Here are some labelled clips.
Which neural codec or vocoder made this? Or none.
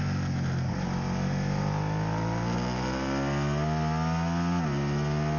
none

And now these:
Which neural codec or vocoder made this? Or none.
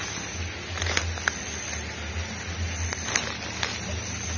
none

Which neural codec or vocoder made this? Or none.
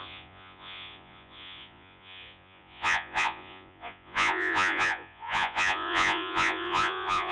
vocoder, Vocos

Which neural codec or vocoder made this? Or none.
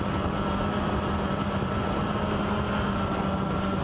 none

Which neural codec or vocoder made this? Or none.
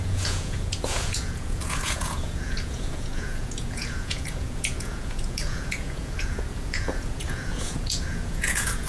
vocoder, Vocos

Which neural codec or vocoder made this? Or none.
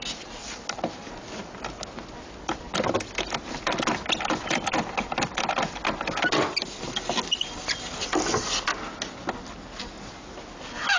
none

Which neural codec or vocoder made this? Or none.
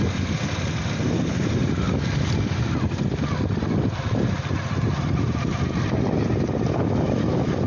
none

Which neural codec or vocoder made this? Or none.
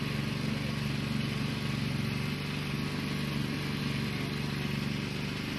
none